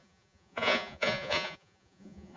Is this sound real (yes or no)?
no